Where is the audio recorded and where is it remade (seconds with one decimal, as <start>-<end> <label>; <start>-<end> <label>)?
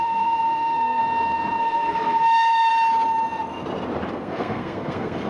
0.0-1.0 remade; 1.0-1.6 recorded; 1.6-2.7 remade; 2.7-4.1 recorded; 4.1-5.3 remade